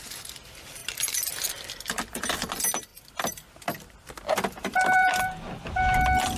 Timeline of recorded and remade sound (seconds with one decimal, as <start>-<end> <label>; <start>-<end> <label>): 0.0-0.8 recorded; 0.8-2.2 remade; 2.2-2.9 recorded; 2.9-5.8 remade; 5.8-6.4 recorded